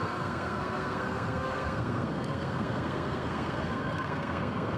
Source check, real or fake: fake